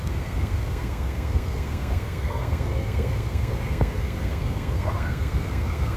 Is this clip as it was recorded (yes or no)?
no